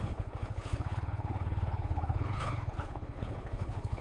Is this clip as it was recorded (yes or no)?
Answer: no